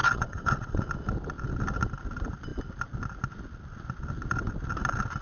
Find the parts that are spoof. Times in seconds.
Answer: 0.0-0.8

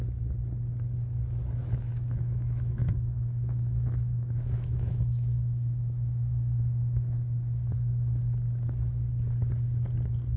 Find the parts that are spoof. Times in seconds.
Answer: 1.6-6.6

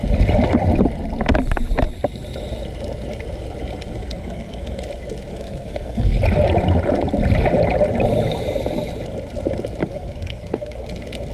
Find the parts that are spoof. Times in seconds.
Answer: 4.0-4.8; 5.3-6.2; 9.8-10.9

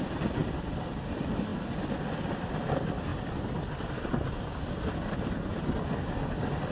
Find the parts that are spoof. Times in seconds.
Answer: none